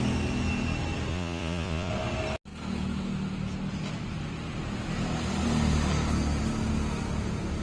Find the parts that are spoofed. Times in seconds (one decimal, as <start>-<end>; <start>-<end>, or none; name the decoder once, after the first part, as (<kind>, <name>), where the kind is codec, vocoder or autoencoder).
1.1-1.9 (vocoder, Vocos)